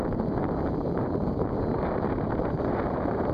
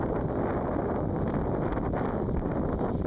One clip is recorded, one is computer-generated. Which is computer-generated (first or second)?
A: first